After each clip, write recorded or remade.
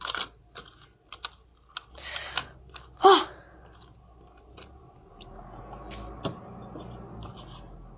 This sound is recorded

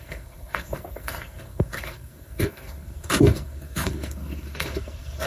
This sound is remade